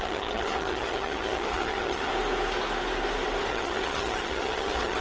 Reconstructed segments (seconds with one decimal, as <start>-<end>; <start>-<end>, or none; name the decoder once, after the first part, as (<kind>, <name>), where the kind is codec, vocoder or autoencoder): 0.0-2.1 (vocoder, HiFi-GAN); 3.5-5.0